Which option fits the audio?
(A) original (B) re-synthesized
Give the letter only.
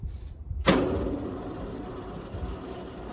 B